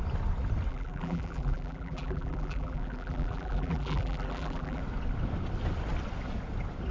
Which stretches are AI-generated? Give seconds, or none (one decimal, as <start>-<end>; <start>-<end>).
0.7-4.8